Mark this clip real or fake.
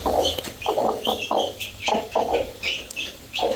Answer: fake